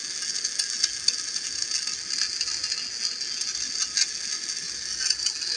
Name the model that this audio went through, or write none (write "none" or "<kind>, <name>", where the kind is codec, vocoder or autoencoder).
none